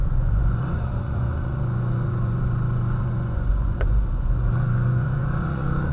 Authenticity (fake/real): fake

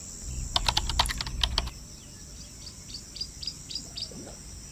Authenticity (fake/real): real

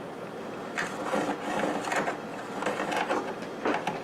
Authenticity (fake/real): real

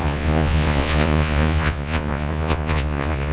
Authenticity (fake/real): fake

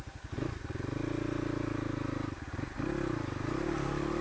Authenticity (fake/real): real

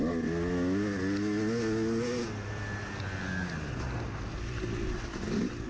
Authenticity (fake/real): real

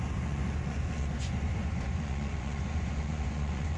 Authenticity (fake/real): fake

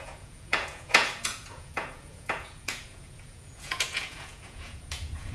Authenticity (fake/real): fake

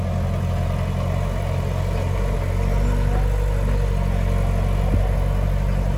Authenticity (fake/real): real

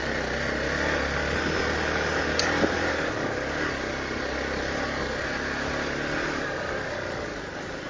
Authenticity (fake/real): real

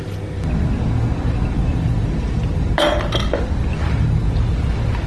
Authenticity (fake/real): real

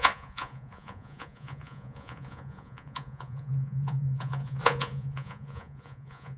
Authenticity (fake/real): fake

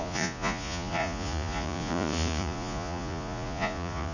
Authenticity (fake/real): fake